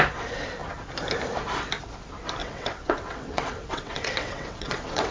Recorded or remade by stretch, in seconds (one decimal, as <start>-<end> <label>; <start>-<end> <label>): 0.0-2.4 recorded; 2.4-5.1 remade